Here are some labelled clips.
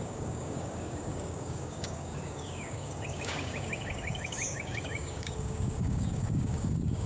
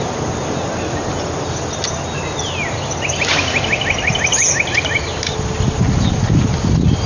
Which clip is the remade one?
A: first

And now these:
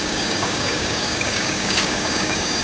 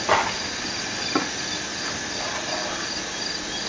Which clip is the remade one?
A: first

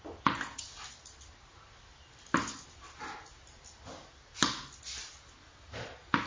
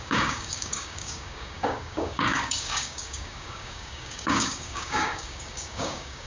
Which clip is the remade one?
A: second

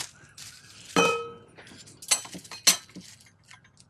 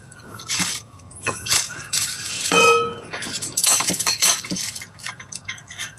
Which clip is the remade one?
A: second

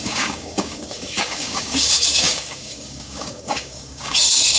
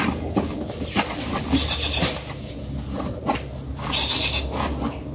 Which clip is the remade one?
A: first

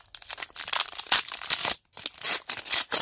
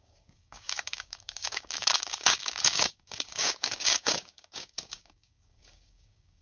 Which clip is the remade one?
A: second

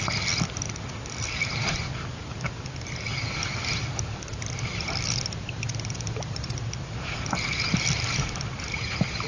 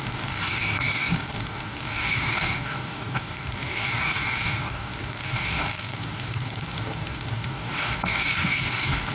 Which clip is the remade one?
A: second